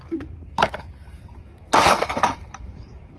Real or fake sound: fake